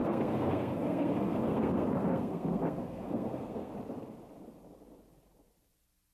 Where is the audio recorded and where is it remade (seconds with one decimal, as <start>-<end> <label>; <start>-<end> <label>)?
0.0-3.7 remade; 3.7-6.1 recorded